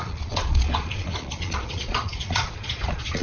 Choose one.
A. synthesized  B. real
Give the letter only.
A